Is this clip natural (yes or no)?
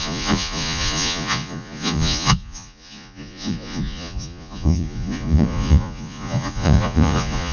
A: no